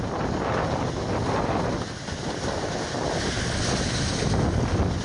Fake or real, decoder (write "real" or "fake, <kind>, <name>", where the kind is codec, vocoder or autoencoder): real